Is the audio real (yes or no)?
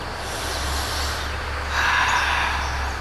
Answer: yes